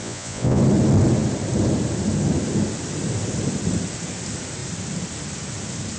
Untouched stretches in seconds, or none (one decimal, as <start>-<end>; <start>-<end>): 0.6-6.0